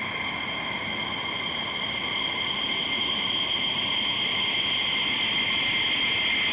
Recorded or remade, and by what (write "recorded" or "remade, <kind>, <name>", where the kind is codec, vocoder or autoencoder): recorded